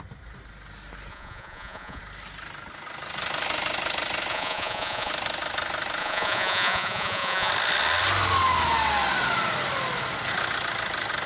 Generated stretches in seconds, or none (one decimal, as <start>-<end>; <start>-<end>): 1.1-2.0; 4.3-5.1; 6.0-7.5